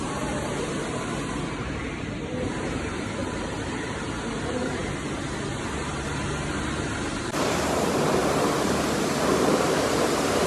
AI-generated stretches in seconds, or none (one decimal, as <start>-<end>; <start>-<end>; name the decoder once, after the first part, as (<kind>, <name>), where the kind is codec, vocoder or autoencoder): 0.0-4.8 (vocoder, BigVGAN v2); 7.2-8.2; 9.6-10.5